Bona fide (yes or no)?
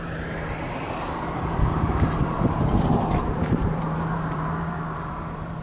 no